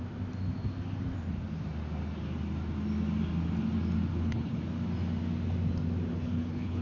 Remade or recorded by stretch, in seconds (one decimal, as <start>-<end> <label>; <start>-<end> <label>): 0.0-4.1 recorded; 4.1-4.6 remade; 4.6-6.1 recorded; 6.1-6.8 remade